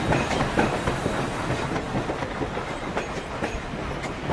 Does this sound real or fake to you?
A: real